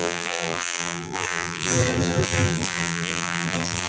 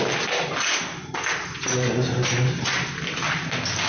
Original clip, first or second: second